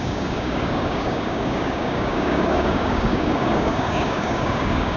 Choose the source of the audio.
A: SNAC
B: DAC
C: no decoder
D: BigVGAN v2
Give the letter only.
B